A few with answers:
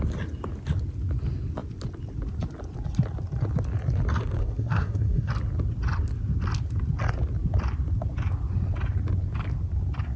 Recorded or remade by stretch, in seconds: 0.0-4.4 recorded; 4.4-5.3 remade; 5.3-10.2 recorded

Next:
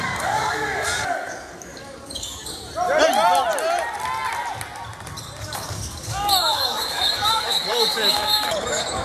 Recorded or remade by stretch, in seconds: 0.0-2.6 remade; 2.6-5.4 recorded; 5.4-9.0 remade

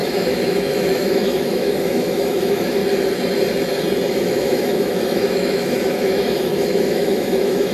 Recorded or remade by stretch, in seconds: 0.0-2.8 remade; 2.8-4.1 recorded; 4.1-7.7 remade

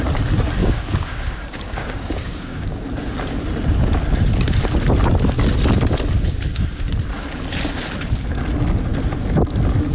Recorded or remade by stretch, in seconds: 0.0-0.6 recorded; 0.6-2.8 remade; 2.8-9.9 recorded

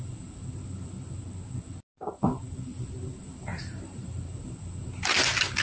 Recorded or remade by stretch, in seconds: 0.0-3.5 recorded; 3.5-4.2 remade; 4.2-5.6 recorded